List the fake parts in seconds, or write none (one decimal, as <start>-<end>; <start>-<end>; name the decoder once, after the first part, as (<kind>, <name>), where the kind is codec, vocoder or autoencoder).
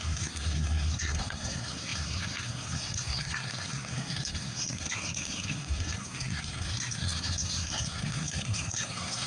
0.0-9.3 (codec, SNAC)